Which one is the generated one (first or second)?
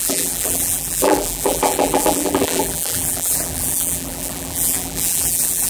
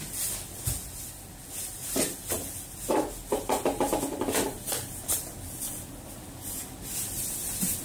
first